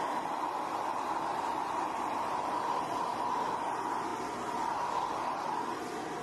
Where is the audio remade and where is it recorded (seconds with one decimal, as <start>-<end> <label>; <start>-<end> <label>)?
0.0-1.3 recorded; 1.3-3.4 remade; 3.4-6.2 recorded